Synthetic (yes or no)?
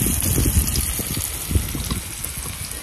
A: no